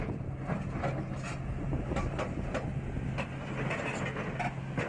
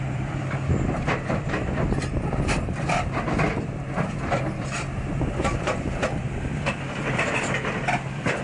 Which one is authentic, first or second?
first